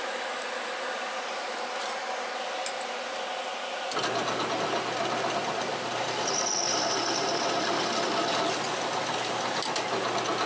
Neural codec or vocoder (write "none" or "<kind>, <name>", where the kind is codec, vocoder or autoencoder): none